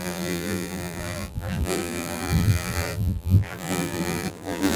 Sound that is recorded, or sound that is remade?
remade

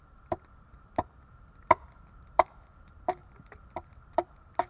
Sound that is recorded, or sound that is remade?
remade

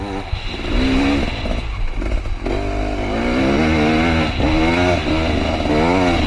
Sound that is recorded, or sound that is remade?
recorded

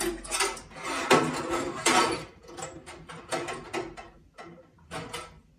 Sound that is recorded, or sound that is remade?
recorded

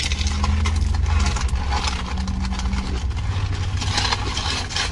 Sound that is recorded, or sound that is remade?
recorded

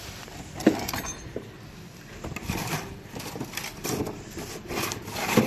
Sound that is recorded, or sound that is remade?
remade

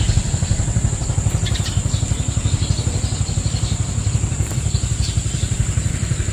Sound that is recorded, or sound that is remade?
remade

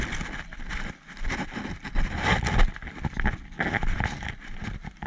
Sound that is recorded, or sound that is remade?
recorded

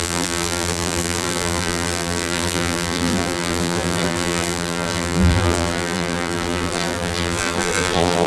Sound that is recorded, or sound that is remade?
remade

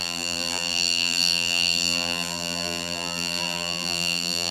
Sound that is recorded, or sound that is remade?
remade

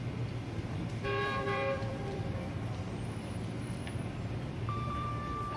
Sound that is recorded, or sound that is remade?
remade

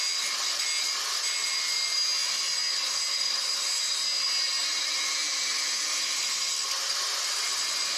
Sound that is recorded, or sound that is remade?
recorded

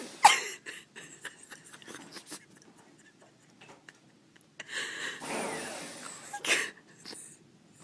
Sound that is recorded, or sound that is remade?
recorded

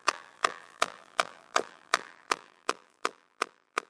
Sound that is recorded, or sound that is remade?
remade